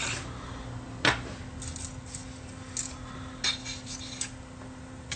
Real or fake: real